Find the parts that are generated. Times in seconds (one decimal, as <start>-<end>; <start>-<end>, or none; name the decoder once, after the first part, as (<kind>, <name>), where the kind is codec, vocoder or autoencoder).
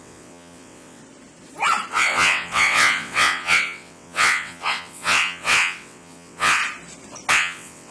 0.0-1.0 (vocoder, WaveNeXt); 1.9-6.6; 7.3-7.9